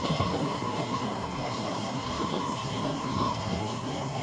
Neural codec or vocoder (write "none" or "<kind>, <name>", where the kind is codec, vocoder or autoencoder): codec, SNAC